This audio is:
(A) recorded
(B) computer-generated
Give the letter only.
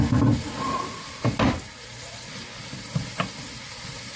A